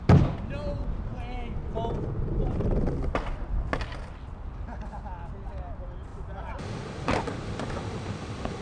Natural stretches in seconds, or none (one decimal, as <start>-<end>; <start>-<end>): 0.0-8.6